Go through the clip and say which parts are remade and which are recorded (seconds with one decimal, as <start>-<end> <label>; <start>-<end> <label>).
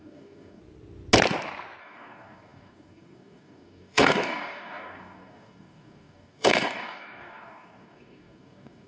0.0-0.6 remade; 0.6-1.8 recorded; 1.8-8.9 remade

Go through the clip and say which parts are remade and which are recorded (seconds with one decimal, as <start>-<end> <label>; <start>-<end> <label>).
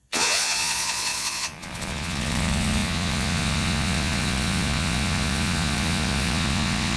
0.0-7.0 remade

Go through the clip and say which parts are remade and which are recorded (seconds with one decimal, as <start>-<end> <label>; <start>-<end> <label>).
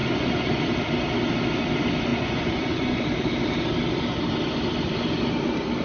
0.0-0.6 remade; 0.6-2.1 recorded; 2.1-3.0 remade; 3.0-5.8 recorded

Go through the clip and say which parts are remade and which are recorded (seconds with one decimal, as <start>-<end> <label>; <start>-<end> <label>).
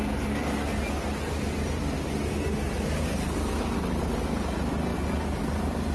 0.0-5.9 recorded